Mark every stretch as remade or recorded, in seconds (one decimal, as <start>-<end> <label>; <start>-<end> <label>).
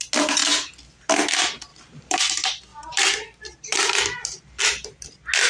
0.0-1.7 recorded; 1.7-2.2 remade; 2.2-2.7 recorded; 2.7-4.6 remade; 4.6-5.5 recorded